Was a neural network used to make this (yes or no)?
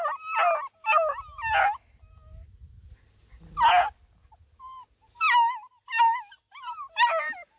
no